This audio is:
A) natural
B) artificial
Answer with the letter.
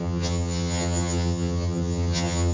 B